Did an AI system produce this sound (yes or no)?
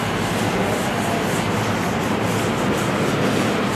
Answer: no